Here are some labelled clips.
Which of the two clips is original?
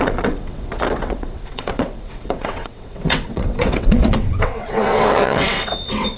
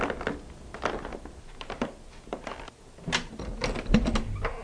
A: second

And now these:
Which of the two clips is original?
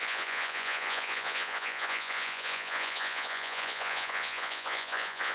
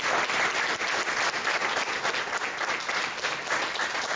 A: second